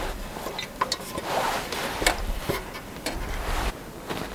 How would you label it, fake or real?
fake